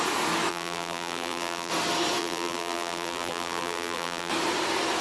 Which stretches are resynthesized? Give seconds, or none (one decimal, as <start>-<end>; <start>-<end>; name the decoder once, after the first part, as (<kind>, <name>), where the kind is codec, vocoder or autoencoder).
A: 0.5-1.7 (vocoder, BigVGAN v2); 2.2-4.3